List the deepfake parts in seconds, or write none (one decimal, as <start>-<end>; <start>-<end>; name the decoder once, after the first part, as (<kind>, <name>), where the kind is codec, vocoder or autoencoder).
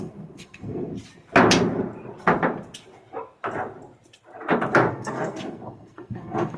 0.0-0.9 (codec, SNAC); 4.9-6.6